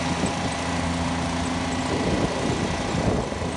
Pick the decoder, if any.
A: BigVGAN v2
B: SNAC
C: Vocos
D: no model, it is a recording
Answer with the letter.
D